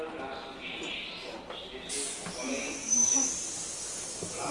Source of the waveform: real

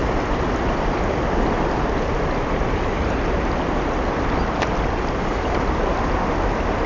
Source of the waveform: real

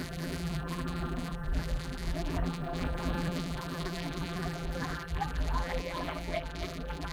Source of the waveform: fake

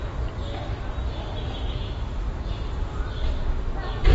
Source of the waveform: real